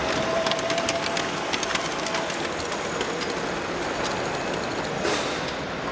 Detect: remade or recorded recorded